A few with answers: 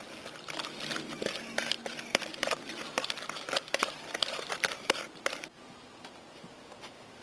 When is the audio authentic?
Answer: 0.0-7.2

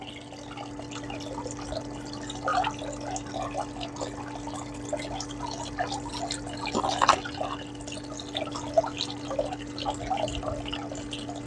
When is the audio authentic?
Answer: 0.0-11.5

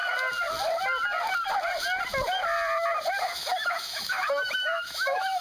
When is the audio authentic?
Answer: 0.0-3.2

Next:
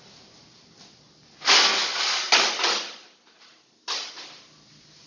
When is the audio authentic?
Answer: 0.0-5.1

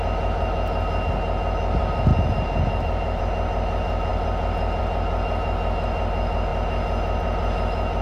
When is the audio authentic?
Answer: 0.0-8.0